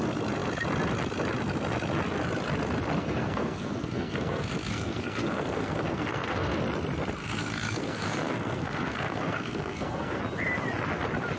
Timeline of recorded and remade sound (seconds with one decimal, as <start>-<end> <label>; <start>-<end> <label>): 0.0-3.0 recorded; 3.0-6.6 remade; 6.6-7.2 recorded; 7.2-10.2 remade; 10.2-11.4 recorded